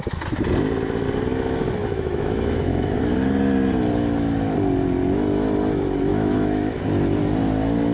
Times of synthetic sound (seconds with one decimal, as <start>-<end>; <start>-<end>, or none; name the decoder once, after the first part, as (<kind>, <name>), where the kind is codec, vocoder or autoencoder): 1.8-3.0 (autoencoder, DAC-VAE); 6.1-6.8